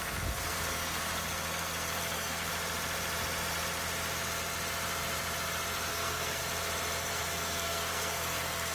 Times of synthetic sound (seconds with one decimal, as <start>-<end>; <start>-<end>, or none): 0.0-2.5; 5.9-6.4; 7.1-8.7